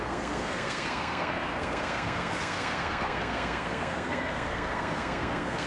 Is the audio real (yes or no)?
no